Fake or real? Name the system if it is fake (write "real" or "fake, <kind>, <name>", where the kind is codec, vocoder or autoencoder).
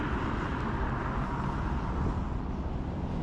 real